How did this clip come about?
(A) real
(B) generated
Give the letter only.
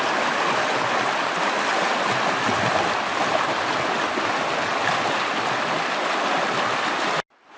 A